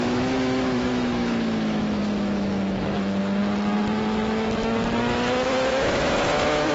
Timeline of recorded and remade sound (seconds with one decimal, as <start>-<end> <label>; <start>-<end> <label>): 0.0-6.7 remade